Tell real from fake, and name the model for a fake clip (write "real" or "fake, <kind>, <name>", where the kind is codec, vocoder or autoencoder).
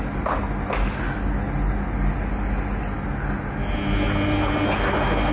real